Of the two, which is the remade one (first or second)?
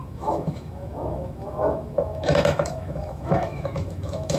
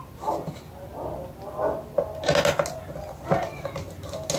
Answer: first